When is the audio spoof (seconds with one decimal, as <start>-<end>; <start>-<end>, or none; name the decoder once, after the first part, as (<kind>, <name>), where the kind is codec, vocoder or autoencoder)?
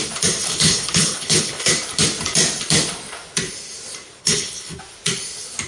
0.4-1.7 (codec, HILCodec); 4.2-4.8